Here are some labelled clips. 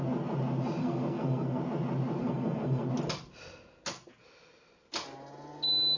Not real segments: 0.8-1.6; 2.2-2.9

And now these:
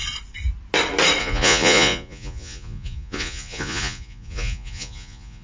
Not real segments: 1.2-5.4

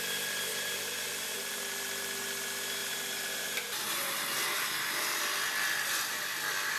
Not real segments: 0.5-1.6; 2.8-5.2

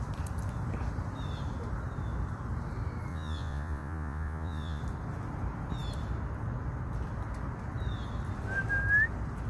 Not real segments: 3.1-4.8

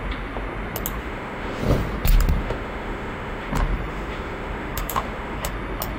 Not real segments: 1.0-1.6; 2.4-3.5; 3.9-5.5

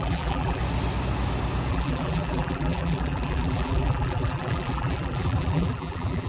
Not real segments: 0.0-0.6; 1.7-6.3